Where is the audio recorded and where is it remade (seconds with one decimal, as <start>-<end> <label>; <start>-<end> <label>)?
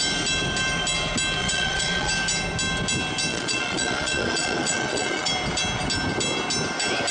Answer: 0.0-1.4 recorded; 1.4-2.1 remade; 2.1-3.3 recorded; 3.3-5.3 remade; 5.3-7.1 recorded